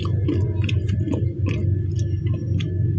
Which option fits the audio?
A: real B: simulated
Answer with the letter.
A